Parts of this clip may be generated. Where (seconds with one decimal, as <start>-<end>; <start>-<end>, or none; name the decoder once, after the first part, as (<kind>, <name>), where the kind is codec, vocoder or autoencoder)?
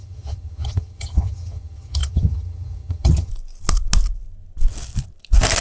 0.0-3.3 (vocoder, HiFi-GAN)